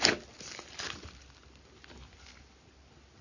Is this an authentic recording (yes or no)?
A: yes